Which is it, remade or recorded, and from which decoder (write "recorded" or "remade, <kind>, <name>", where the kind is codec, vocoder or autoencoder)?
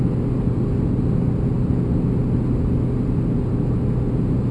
recorded